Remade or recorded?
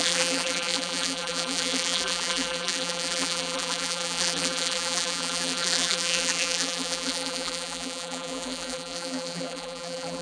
remade